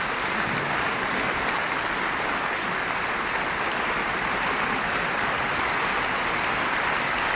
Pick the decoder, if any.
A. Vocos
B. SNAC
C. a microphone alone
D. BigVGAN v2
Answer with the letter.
C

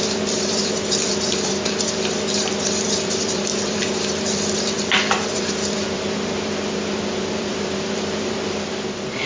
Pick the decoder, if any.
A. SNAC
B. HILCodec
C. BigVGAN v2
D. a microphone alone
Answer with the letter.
C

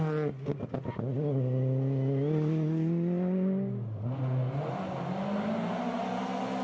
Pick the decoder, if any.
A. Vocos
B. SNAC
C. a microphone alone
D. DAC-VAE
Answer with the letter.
C